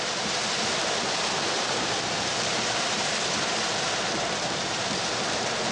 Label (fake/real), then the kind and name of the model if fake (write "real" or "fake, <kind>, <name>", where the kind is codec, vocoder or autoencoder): fake, vocoder, BigVGAN v2